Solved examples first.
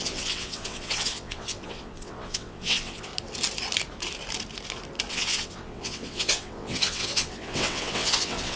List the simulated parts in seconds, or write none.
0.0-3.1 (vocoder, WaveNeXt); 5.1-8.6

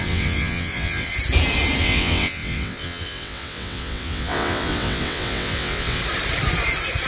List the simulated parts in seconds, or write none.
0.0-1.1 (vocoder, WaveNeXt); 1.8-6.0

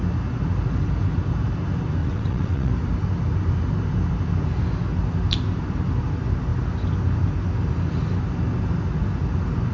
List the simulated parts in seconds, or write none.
2.0-2.7 (vocoder, WaveNeXt)